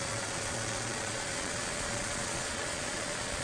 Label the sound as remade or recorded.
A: remade